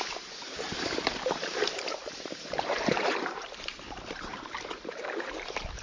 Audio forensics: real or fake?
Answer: fake